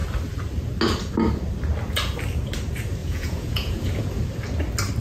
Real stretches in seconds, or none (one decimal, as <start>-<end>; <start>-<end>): 0.0-3.0; 4.1-5.0